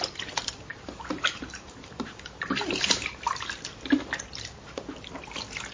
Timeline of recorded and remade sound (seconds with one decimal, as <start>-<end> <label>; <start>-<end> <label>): 0.0-0.7 recorded; 0.7-2.8 remade; 2.8-5.7 recorded